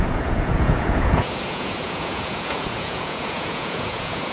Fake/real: fake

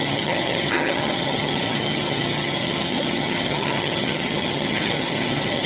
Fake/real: fake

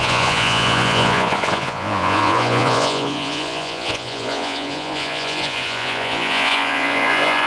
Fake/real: fake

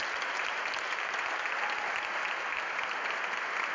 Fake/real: real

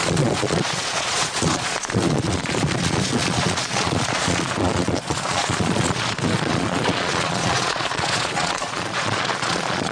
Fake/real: fake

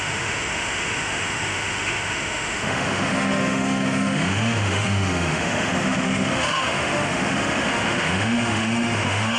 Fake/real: fake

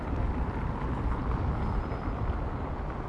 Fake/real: real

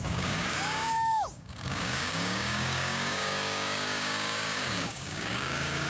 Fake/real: fake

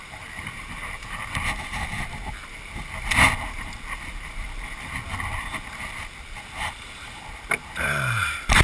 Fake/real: real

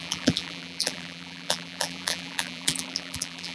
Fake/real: fake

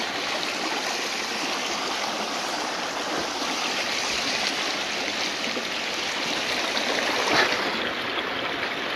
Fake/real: real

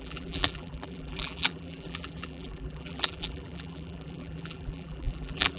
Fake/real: fake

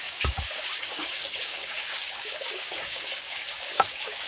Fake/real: fake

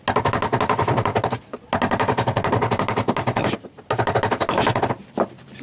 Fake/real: real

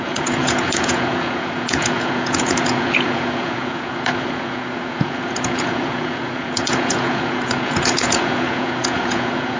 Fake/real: fake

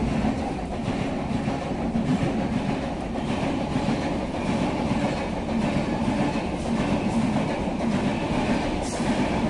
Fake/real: real